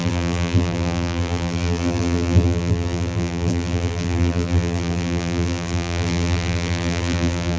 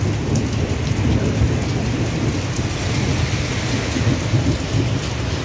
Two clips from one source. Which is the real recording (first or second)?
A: second